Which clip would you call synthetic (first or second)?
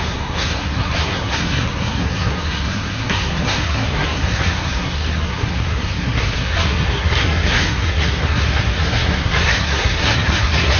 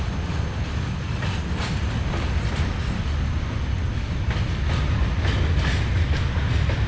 first